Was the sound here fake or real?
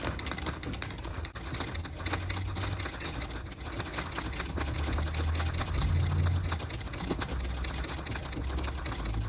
real